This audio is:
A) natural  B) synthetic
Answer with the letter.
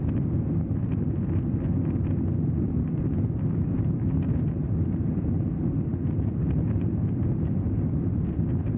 A